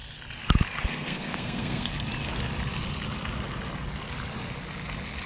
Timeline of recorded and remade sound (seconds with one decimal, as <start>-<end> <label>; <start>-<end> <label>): 0.0-0.8 recorded; 0.8-1.9 remade; 1.9-5.3 recorded